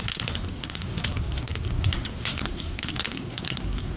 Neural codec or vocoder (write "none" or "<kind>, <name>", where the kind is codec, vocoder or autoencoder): codec, SNAC